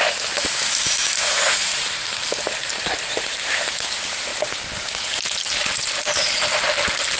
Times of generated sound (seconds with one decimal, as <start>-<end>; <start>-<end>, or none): 0.0-1.7; 3.2-4.3